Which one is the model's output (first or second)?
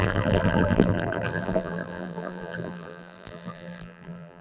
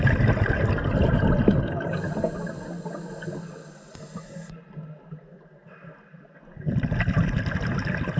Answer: first